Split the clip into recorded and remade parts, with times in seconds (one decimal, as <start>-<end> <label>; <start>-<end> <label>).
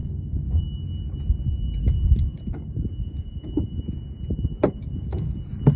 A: 0.0-0.6 remade; 0.6-1.8 recorded; 1.8-3.8 remade; 3.8-4.5 recorded; 4.5-5.3 remade; 5.3-5.8 recorded